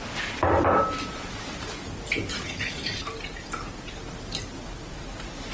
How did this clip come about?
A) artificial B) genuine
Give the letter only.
B